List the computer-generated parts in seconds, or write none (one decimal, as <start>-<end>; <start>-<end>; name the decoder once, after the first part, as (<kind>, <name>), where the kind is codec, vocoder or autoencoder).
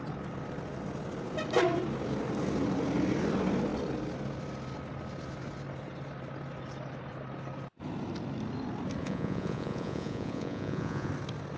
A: 9.0-11.1 (vocoder, Vocos)